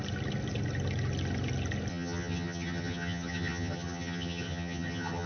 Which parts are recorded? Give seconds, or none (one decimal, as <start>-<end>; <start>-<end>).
0.0-1.9